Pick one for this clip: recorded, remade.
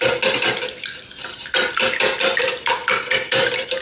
recorded